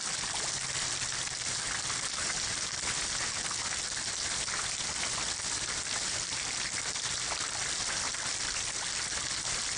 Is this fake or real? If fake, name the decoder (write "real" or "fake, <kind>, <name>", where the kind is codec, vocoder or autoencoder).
real